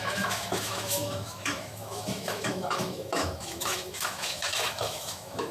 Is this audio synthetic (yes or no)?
yes